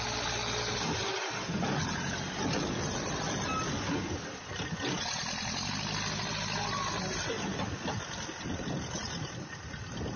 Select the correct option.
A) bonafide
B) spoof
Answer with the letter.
A